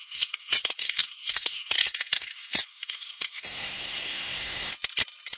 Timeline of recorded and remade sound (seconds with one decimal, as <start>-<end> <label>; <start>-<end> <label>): 0.0-4.7 remade; 4.7-5.4 recorded